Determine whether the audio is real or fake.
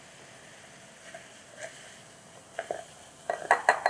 real